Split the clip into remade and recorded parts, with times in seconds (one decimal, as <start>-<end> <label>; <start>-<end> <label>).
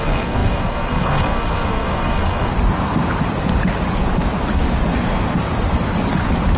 0.0-2.5 remade; 2.5-6.6 recorded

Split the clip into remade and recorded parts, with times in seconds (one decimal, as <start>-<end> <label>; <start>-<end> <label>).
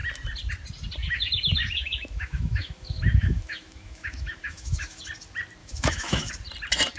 0.0-1.0 recorded; 1.0-5.0 remade; 5.0-5.6 recorded; 5.6-6.3 remade; 6.3-7.0 recorded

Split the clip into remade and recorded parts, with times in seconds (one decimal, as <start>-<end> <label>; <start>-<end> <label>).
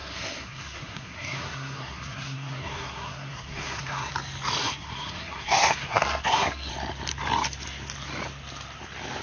0.0-4.1 remade; 4.1-4.6 recorded; 4.6-6.7 remade; 6.7-9.2 recorded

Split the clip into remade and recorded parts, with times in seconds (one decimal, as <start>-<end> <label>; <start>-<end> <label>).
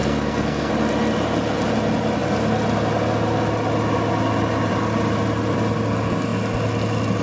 0.0-0.7 remade; 0.7-7.2 recorded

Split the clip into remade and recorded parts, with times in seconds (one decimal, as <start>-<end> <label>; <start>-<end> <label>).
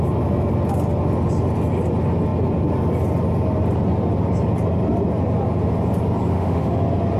0.0-6.3 recorded; 6.3-6.8 remade; 6.8-7.2 recorded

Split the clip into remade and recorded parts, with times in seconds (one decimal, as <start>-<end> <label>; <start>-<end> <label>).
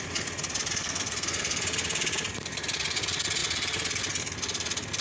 0.0-0.8 recorded; 0.8-1.6 remade; 1.6-5.0 recorded